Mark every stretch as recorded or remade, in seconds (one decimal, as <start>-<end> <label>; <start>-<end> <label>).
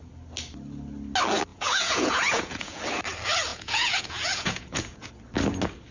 0.0-1.5 recorded; 1.5-2.8 remade; 2.8-3.5 recorded; 3.5-5.1 remade; 5.1-5.9 recorded